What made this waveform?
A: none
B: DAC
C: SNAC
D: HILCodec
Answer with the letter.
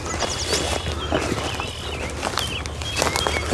A